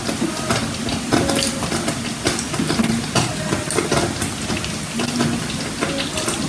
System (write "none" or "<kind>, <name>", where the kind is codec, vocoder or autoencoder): none